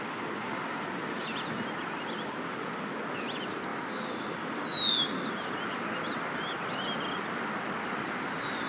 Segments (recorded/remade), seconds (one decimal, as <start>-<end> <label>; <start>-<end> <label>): 0.0-8.7 recorded